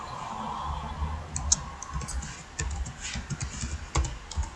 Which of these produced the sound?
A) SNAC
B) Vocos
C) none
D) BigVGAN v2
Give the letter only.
C